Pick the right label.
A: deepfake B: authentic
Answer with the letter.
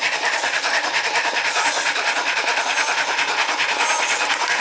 A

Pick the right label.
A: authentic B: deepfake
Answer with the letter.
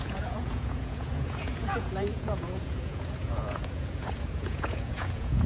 B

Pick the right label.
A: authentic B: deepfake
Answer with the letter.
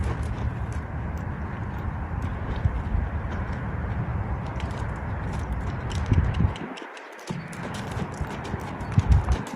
B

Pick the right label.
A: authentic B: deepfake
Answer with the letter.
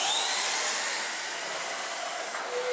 A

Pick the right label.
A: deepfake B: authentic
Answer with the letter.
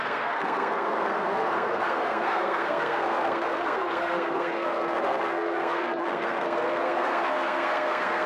A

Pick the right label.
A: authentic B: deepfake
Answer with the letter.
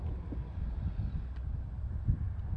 A